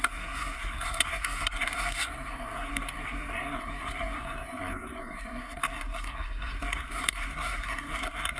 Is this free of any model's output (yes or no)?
no